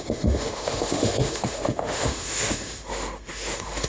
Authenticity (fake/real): fake